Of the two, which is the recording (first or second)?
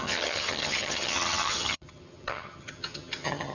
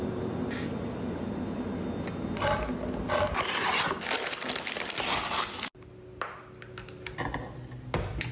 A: second